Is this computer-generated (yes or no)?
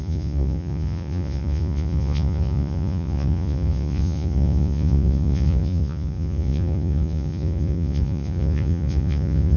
yes